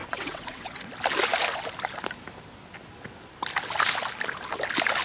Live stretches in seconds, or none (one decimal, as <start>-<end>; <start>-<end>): 0.9-5.0